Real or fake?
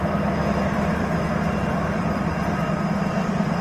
fake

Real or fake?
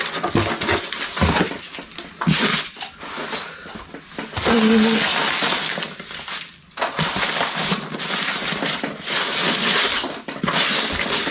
real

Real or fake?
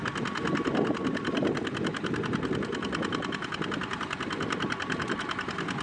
real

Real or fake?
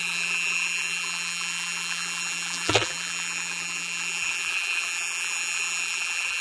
fake